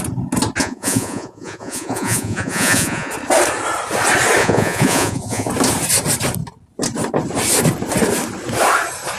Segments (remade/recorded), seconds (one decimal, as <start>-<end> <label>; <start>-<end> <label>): 0.0-0.6 recorded; 0.6-3.1 remade; 3.1-4.4 recorded; 4.4-5.5 remade; 5.5-9.2 recorded